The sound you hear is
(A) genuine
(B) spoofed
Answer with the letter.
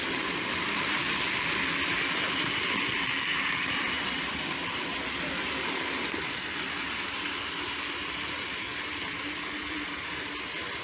A